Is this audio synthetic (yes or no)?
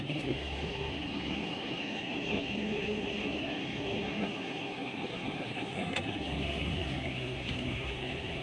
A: yes